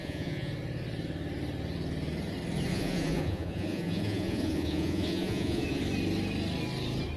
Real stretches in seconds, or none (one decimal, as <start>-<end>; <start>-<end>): 0.5-2.7; 5.8-7.2